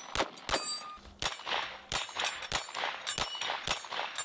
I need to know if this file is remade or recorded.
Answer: recorded